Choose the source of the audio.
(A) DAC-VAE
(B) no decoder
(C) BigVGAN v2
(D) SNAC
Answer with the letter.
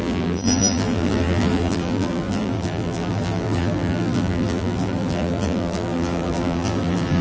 C